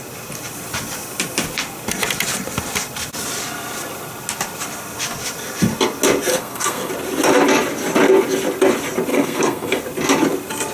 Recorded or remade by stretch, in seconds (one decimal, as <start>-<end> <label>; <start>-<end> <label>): 0.0-6.3 recorded; 6.3-6.9 remade; 6.9-9.1 recorded; 9.1-9.8 remade; 9.8-10.7 recorded